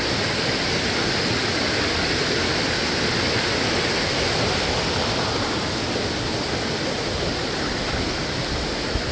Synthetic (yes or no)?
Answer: no